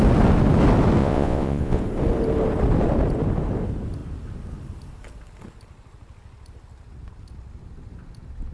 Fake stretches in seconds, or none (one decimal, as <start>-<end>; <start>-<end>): 1.0-1.8